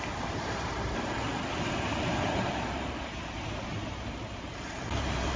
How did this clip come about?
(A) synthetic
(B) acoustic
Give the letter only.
A